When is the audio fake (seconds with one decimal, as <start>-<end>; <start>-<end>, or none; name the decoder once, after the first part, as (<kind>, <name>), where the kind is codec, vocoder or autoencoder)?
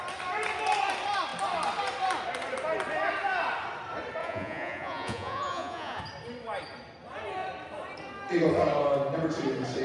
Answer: 4.2-6.0 (vocoder, Vocos)